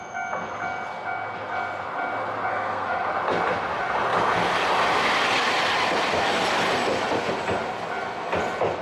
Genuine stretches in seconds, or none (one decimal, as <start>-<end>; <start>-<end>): 0.0-2.5; 3.1-8.8